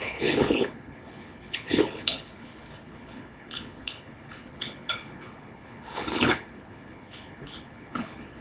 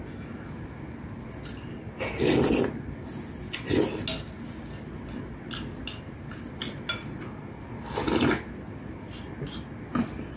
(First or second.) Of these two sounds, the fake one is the first